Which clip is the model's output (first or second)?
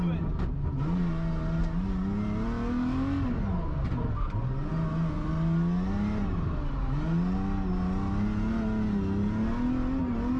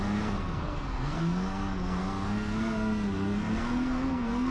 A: second